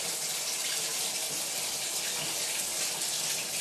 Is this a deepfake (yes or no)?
no